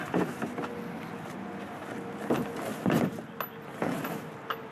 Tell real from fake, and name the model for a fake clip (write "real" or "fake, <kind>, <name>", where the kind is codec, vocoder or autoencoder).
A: real